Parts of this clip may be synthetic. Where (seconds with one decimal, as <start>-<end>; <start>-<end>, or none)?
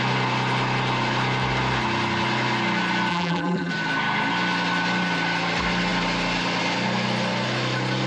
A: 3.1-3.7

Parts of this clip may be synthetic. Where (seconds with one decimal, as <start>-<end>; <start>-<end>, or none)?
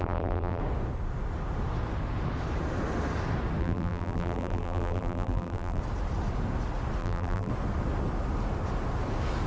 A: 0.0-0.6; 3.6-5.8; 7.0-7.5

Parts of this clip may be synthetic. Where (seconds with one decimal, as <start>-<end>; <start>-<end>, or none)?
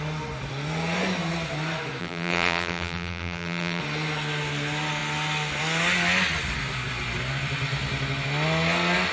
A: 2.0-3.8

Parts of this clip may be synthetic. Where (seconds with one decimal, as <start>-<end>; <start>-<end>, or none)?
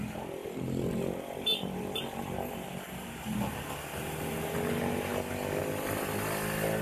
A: 0.4-3.6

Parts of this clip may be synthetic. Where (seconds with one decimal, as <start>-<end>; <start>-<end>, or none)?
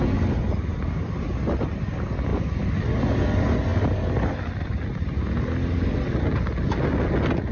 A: 0.7-1.3; 2.3-3.0; 3.7-6.1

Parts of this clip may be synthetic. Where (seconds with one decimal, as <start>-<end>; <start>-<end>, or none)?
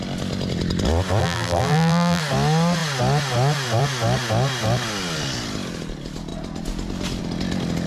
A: 1.2-2.2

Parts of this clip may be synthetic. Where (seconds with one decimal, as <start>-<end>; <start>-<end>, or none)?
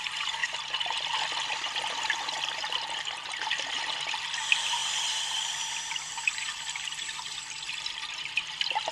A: 0.0-0.4; 1.5-8.9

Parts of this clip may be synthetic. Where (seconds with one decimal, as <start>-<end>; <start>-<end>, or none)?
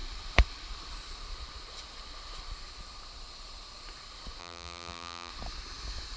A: 4.4-5.3